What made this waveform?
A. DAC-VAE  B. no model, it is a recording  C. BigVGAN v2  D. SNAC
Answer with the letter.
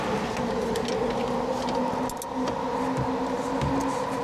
B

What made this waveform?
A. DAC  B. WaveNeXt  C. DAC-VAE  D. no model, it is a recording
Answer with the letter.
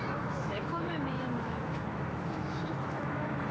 C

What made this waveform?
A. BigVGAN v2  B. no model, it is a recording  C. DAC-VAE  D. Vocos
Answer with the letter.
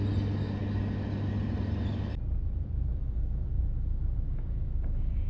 B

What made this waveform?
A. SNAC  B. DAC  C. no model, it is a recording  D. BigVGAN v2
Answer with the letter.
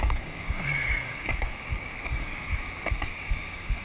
B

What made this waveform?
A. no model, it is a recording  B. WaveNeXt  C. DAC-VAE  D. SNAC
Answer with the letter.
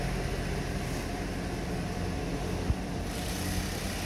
A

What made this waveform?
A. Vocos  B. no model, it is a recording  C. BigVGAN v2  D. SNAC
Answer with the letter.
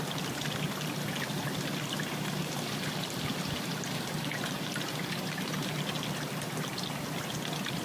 B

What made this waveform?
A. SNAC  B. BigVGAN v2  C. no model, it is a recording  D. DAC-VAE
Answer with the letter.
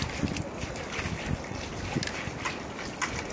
C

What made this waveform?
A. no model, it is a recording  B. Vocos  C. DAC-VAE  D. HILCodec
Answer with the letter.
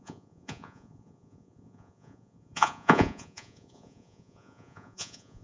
B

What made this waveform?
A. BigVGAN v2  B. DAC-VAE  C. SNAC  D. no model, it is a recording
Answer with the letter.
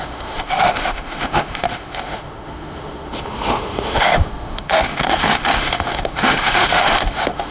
B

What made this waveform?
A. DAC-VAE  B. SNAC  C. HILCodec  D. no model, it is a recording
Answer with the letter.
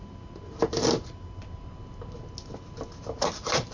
D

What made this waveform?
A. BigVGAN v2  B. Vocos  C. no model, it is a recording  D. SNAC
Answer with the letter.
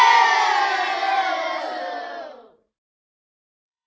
A